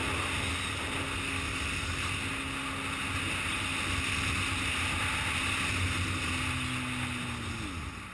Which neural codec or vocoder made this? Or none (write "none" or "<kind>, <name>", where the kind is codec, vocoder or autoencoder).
none